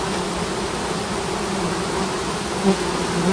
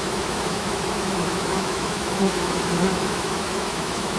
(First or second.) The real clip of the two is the first